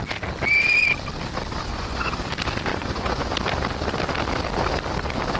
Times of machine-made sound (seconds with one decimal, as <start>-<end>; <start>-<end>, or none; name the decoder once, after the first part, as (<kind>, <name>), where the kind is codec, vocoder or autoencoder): 1.7-2.2 (vocoder, Vocos); 2.7-3.3